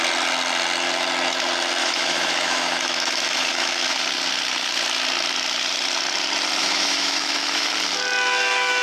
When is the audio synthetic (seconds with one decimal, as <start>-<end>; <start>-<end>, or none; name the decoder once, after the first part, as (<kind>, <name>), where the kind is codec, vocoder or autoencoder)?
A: 1.8-4.0 (autoencoder, DAC-VAE); 6.6-7.7